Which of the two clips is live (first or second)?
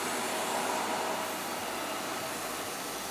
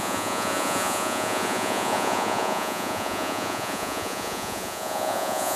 first